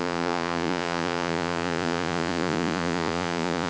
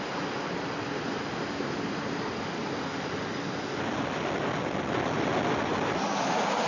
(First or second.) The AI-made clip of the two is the first